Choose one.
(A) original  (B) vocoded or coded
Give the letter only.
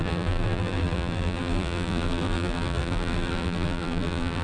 B